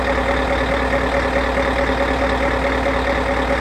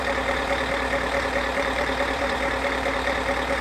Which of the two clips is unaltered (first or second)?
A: first